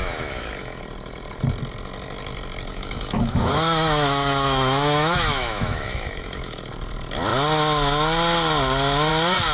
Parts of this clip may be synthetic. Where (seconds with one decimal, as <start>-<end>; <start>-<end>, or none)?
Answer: 0.0-0.8; 2.7-6.6